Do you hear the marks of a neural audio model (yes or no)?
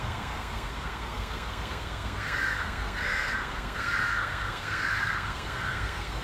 yes